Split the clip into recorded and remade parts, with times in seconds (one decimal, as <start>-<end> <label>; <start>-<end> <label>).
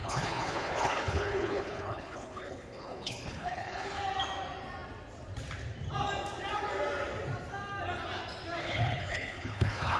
0.0-4.0 remade; 4.0-8.6 recorded; 8.6-10.0 remade